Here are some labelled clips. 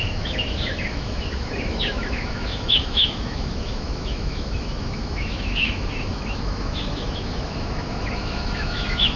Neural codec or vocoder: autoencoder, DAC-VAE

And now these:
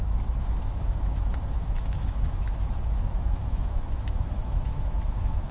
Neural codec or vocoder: autoencoder, DAC-VAE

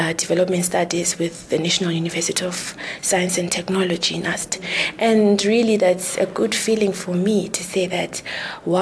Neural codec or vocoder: none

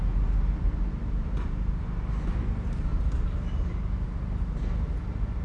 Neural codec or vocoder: none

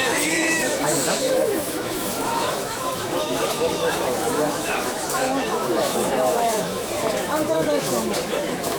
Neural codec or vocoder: autoencoder, DAC-VAE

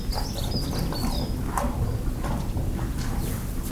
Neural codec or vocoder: none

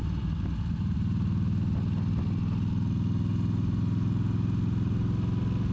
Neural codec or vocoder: none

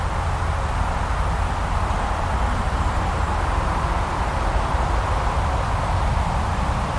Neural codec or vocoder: none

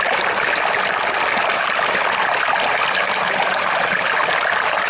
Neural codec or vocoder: none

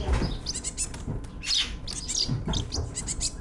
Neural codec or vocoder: none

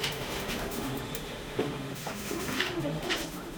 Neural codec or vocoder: autoencoder, DAC-VAE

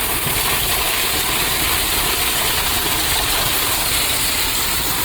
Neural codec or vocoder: none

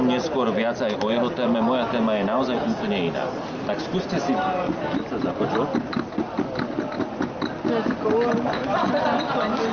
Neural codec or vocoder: none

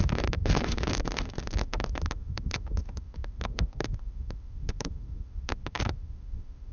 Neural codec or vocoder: autoencoder, DAC-VAE